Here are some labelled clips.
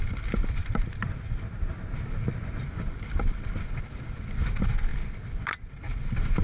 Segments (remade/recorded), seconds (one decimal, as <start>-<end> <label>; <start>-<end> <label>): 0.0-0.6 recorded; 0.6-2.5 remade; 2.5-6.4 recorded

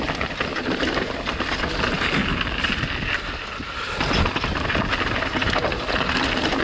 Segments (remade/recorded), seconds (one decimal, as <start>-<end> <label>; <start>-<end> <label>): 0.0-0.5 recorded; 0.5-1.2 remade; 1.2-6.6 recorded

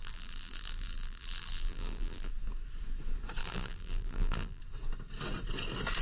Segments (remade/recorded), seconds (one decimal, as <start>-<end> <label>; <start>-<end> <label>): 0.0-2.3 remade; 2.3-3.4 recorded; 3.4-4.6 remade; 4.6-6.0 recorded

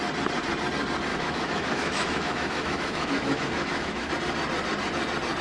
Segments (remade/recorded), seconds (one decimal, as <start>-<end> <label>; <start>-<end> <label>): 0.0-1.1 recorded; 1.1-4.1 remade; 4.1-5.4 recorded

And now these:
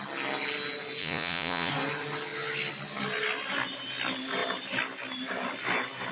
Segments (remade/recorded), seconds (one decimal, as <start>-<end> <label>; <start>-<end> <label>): 0.0-1.0 recorded; 1.0-1.7 remade; 1.7-6.1 recorded

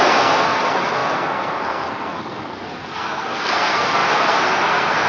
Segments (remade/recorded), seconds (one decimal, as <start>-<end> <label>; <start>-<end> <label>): 0.0-5.1 remade

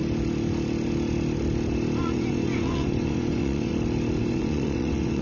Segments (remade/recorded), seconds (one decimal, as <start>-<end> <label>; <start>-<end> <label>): 0.0-2.0 recorded; 2.0-3.7 remade; 3.7-4.2 recorded; 4.2-5.2 remade